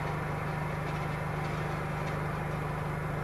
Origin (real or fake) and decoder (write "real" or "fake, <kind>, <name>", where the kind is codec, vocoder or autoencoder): real